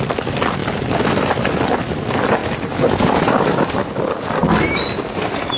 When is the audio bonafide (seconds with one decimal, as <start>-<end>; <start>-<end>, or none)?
0.0-5.6